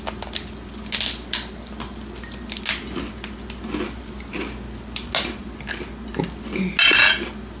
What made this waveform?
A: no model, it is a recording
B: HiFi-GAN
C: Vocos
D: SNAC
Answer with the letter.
A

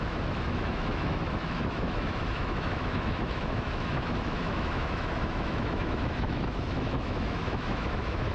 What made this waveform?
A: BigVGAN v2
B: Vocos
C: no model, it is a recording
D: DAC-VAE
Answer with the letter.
D